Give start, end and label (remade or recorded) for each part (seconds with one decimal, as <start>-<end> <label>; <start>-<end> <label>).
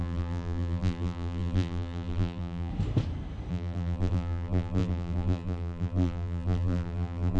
0.0-2.7 remade; 2.7-3.5 recorded; 3.5-7.4 remade